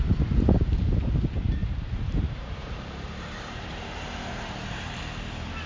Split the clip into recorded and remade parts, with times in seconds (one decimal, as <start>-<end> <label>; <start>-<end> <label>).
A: 0.0-1.6 recorded; 1.6-5.0 remade; 5.0-5.7 recorded